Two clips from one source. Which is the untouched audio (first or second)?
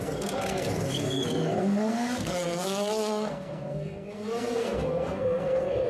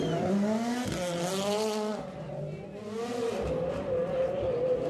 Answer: second